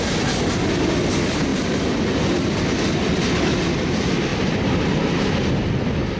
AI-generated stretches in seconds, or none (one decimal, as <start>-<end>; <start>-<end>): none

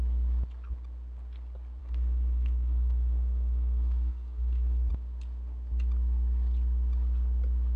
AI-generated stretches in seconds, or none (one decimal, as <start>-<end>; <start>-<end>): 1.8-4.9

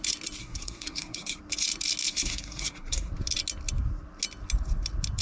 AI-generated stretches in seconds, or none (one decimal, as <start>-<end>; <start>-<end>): 0.4-1.4; 2.1-3.1

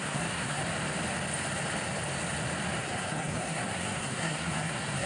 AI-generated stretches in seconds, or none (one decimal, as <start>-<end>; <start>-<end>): 0.0-0.6; 2.8-5.1